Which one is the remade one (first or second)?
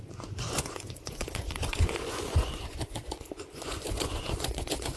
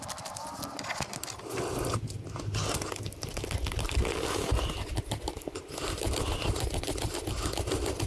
first